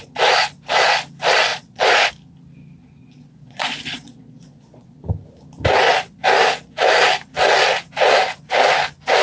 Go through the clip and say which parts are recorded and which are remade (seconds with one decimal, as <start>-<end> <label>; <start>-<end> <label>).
0.0-1.5 recorded; 1.5-2.1 remade; 2.1-3.0 recorded; 3.0-5.1 remade; 5.1-9.2 recorded